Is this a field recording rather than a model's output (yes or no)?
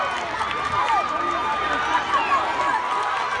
yes